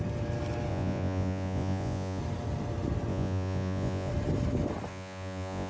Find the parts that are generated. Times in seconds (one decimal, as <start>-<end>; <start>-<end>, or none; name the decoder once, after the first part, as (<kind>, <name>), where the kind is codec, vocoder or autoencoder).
0.7-2.2 (vocoder, Vocos); 3.1-4.1; 4.9-5.7